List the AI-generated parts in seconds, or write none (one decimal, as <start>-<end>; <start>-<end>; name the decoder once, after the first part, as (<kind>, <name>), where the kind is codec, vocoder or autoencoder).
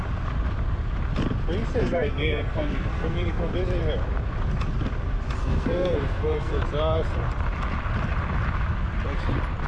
1.8-3.5 (codec, SNAC); 5.4-6.6